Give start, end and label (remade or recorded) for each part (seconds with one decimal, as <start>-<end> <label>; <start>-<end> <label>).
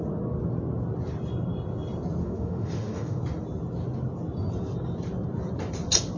0.0-2.2 recorded; 2.2-3.2 remade; 3.2-6.2 recorded